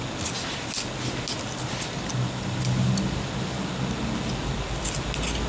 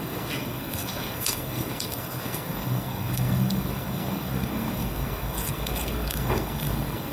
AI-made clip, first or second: second